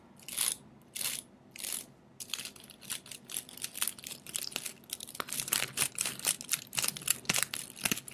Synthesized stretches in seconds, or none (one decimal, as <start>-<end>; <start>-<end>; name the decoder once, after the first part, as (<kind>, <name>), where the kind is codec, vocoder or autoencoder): none